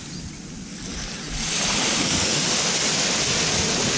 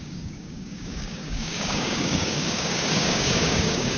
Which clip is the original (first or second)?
first